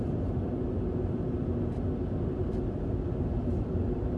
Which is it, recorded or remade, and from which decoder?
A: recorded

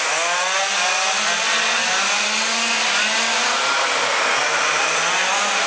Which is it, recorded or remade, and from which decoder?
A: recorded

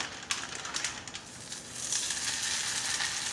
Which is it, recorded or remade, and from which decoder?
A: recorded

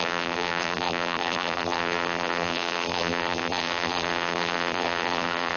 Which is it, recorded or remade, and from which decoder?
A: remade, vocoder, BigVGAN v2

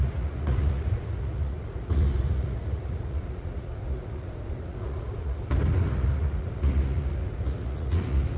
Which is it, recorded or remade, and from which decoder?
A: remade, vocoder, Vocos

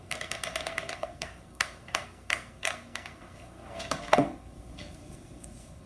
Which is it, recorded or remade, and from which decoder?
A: remade, codec, SNAC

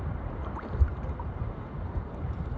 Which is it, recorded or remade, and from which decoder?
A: remade, vocoder, BigVGAN v2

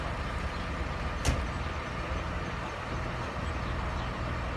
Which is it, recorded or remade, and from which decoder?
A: recorded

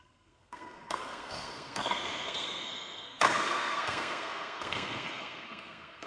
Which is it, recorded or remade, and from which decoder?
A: remade, codec, SNAC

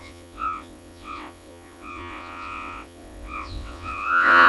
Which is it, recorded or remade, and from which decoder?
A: remade, vocoder, WaveNeXt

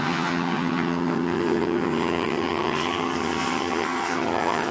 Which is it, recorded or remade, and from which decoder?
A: remade, vocoder, HiFi-GAN